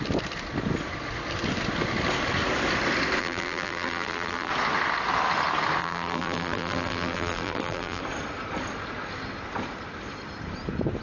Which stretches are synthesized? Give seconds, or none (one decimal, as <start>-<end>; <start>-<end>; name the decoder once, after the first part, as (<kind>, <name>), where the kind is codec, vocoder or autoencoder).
3.2-4.5 (vocoder, BigVGAN v2); 5.8-8.0